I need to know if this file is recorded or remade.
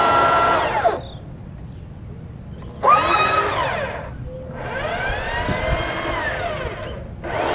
recorded